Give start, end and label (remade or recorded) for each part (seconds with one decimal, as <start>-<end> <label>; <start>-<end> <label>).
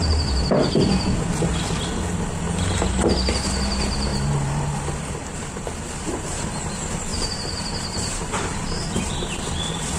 0.0-4.1 recorded; 4.1-6.6 remade; 6.6-7.1 recorded; 7.1-9.5 remade; 9.5-10.0 recorded